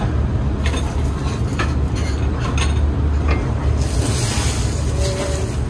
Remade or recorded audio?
recorded